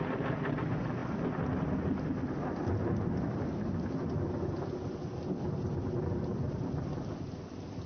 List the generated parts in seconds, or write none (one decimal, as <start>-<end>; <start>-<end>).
none